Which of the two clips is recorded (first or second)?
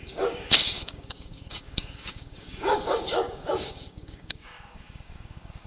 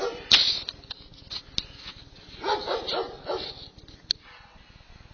second